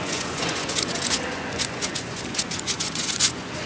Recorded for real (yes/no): no